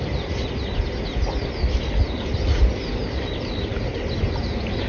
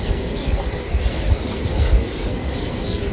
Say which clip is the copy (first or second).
second